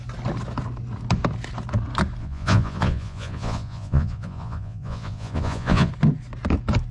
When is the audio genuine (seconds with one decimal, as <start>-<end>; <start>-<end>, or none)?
0.0-2.2; 5.9-6.9